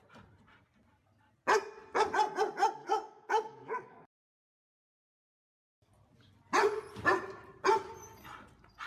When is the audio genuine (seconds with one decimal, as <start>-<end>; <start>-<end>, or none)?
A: 0.0-2.8; 5.9-8.9